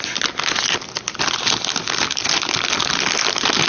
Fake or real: real